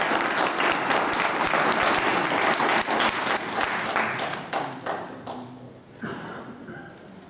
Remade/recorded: recorded